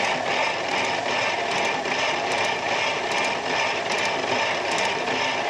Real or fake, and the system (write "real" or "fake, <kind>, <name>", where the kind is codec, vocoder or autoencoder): real